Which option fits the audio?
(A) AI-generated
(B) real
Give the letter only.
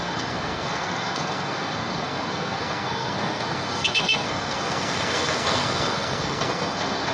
A